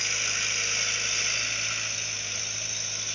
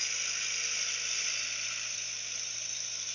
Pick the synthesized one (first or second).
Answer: second